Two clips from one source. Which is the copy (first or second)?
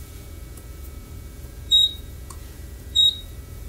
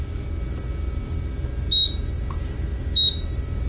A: first